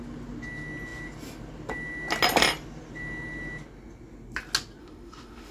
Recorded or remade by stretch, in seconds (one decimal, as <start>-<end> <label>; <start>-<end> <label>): 0.0-4.8 recorded; 4.8-5.5 remade